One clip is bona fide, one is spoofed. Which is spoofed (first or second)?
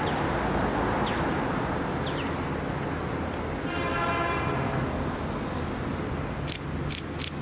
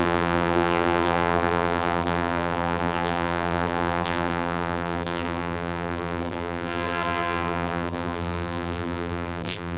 second